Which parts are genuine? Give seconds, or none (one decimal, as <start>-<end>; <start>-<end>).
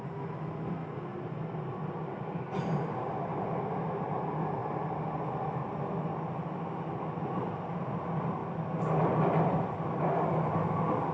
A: 0.0-1.1; 3.1-11.1